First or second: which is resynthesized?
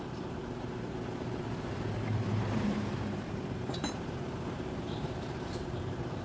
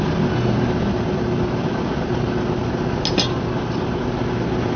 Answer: first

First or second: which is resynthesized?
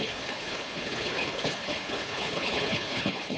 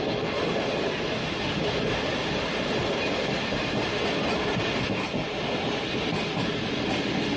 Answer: first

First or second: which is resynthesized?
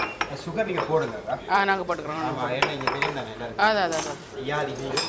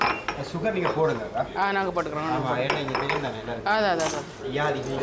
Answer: first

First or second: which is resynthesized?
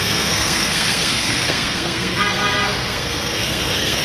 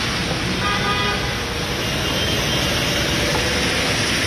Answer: first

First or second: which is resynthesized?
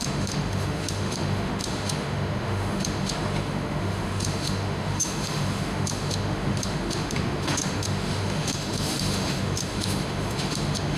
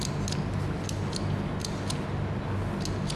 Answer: first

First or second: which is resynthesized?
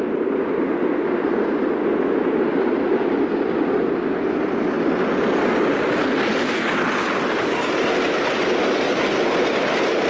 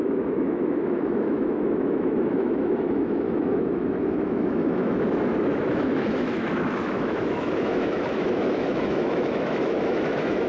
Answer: second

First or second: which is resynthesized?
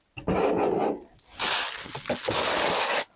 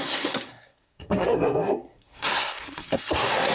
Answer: second